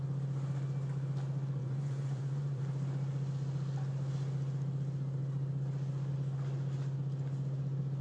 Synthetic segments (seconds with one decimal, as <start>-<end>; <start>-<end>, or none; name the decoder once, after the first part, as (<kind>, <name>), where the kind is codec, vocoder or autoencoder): 1.6-2.6 (vocoder, Vocos)